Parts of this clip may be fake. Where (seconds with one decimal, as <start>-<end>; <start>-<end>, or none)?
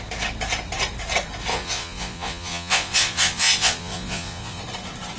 1.5-4.6